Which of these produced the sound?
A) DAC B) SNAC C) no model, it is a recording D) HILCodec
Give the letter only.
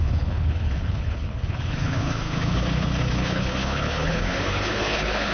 D